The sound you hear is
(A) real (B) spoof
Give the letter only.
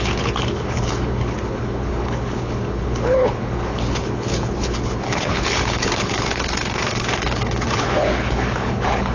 B